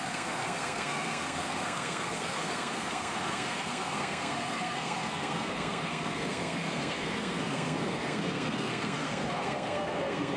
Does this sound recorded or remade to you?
remade